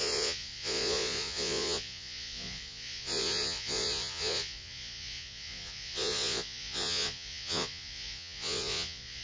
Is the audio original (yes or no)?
no